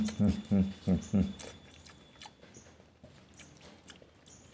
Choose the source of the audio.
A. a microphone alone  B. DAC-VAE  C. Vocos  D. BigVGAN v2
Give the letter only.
A